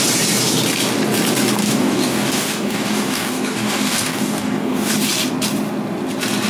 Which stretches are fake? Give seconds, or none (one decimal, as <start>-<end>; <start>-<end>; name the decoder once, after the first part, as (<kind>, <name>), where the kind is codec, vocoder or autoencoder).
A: 1.6-4.9 (codec, DAC)